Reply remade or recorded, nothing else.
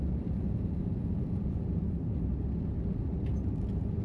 recorded